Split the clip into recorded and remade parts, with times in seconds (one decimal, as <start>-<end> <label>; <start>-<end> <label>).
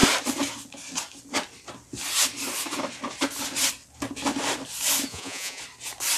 0.0-5.1 recorded; 5.1-5.6 remade; 5.6-6.2 recorded